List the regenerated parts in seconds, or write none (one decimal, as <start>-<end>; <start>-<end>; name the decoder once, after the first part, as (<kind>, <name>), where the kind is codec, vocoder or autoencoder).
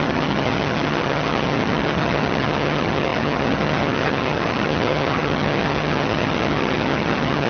0.0-7.5 (vocoder, HiFi-GAN)